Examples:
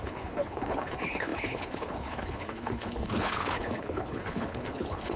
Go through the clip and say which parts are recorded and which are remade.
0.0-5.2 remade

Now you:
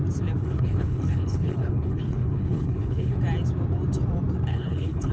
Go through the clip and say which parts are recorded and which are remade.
0.0-0.4 recorded; 0.4-3.2 remade; 3.2-4.5 recorded; 4.5-5.1 remade

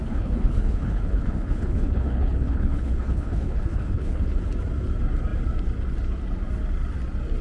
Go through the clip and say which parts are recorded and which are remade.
0.0-4.4 remade; 4.4-7.4 recorded

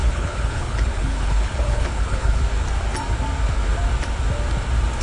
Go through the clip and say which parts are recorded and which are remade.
0.0-2.4 remade; 2.4-5.0 recorded

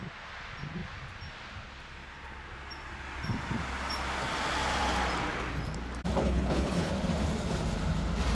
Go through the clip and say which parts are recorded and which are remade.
0.0-6.2 recorded; 6.2-6.9 remade; 6.9-8.3 recorded